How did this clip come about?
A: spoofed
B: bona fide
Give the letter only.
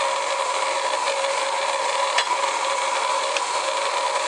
B